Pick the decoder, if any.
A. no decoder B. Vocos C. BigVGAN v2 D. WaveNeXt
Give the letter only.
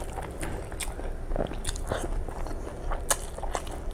A